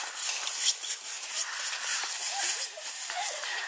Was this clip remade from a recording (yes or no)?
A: no